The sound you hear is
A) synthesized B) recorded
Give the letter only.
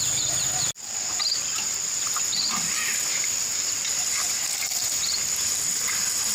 B